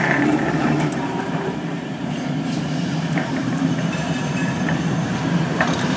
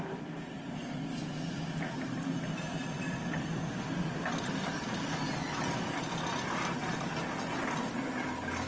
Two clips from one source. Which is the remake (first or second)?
first